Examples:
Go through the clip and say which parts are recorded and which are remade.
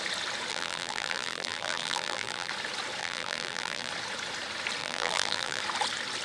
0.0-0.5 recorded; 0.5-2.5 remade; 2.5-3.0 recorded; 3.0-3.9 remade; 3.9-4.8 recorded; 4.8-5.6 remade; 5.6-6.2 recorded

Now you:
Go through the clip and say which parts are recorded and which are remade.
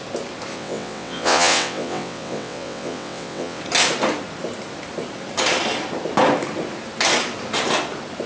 0.0-0.5 recorded; 0.5-3.6 remade; 3.6-8.3 recorded